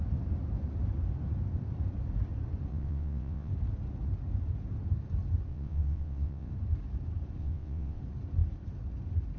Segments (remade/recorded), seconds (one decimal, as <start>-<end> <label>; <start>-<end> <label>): 0.0-2.7 recorded; 2.7-3.5 remade; 3.5-5.5 recorded; 5.5-6.5 remade; 6.5-7.4 recorded; 7.4-8.0 remade; 8.0-9.4 recorded